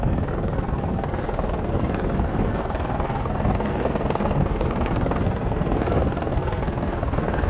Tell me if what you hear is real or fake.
fake